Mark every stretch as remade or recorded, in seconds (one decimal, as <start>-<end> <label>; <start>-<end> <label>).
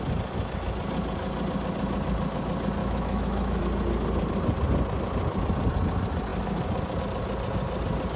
0.0-2.8 recorded; 2.8-3.6 remade; 3.6-8.2 recorded